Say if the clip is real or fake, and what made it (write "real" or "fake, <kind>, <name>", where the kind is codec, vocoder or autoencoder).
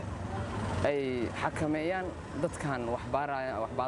real